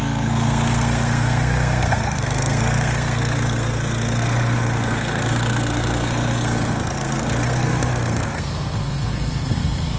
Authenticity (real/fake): fake